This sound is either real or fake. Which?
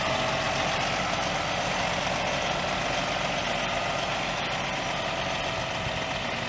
real